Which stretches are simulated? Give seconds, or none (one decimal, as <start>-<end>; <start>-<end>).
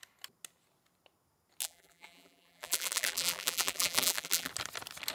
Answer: 1.6-4.5